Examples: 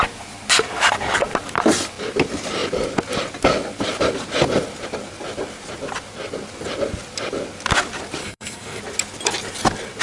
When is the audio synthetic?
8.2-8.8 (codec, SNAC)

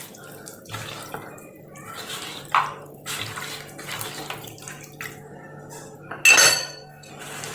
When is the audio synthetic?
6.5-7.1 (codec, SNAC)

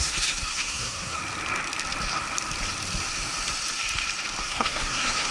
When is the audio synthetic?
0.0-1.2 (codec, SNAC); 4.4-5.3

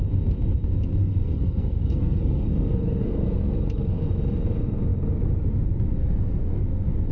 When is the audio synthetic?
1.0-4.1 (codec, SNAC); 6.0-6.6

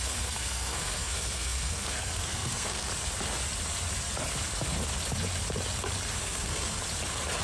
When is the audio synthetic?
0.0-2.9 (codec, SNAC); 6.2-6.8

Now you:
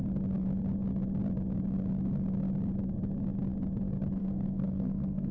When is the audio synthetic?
4.2-5.3 (codec, SNAC)